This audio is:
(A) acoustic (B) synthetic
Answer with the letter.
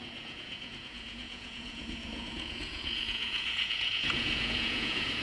B